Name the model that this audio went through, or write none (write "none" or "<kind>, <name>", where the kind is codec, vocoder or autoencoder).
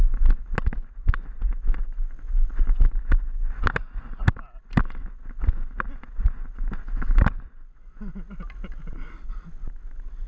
none